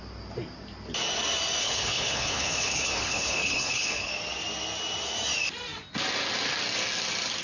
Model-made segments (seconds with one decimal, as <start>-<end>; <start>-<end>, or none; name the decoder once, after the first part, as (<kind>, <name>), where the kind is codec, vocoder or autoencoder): 1.6-4.1 (codec, HILCodec)